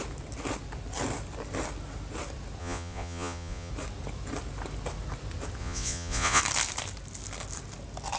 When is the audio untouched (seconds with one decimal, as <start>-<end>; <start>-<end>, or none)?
0.0-2.6; 3.7-5.6; 6.4-8.2